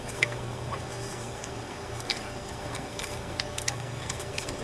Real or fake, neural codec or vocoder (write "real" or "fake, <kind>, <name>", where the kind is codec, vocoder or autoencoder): fake, codec, SNAC